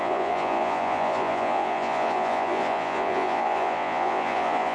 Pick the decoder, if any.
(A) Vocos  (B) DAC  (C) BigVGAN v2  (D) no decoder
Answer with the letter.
A